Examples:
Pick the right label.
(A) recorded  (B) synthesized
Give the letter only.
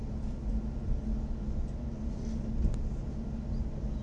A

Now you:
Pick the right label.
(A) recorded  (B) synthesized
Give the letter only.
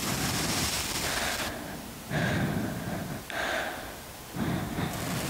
A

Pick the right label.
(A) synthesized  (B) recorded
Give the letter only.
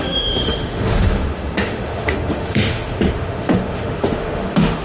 A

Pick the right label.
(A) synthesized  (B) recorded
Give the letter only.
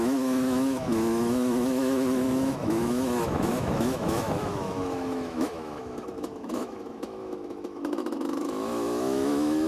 A